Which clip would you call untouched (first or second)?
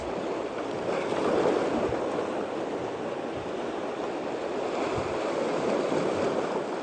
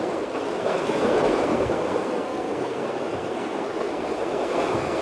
first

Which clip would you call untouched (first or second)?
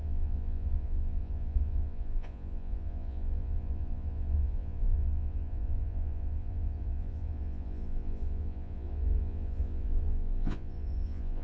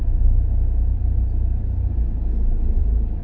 second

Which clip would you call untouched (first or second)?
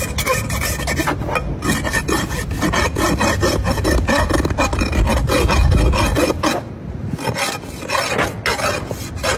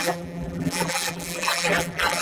first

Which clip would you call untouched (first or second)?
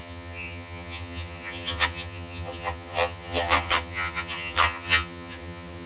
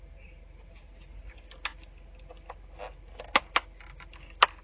second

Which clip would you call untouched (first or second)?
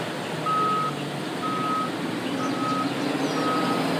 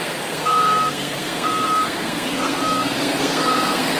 first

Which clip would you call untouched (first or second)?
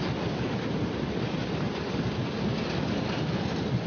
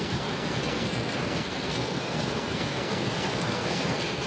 first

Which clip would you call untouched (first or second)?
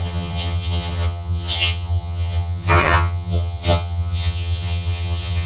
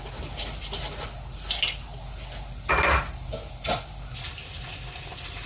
second